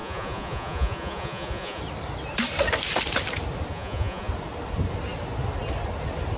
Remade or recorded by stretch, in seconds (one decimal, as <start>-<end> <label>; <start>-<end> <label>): 0.0-1.8 remade; 1.8-3.7 recorded; 3.7-4.3 remade; 4.3-6.4 recorded